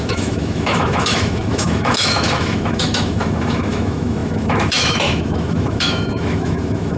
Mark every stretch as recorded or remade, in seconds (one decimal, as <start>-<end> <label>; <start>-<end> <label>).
0.0-7.0 remade

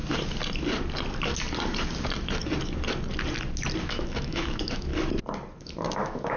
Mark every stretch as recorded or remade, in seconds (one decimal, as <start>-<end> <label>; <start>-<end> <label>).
0.0-3.8 recorded; 3.8-4.9 remade; 4.9-5.6 recorded; 5.6-6.4 remade

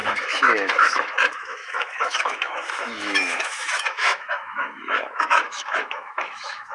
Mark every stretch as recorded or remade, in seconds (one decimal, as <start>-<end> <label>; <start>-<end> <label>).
0.0-6.7 remade

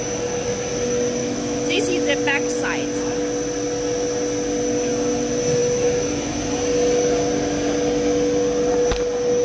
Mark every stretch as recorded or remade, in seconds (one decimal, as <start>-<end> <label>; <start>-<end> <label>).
0.0-1.2 recorded; 1.2-1.8 remade; 1.8-9.4 recorded

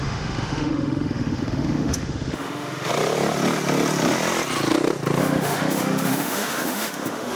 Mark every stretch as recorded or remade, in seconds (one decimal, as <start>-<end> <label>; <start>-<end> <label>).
0.0-2.9 remade; 2.9-5.2 recorded; 5.2-7.4 remade

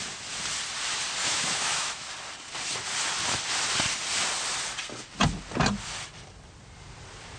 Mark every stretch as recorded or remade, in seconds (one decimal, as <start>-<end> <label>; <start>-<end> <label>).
0.0-1.2 recorded; 1.2-2.1 remade; 2.1-7.4 recorded